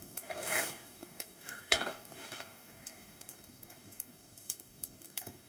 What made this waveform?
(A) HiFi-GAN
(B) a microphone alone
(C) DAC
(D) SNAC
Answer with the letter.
C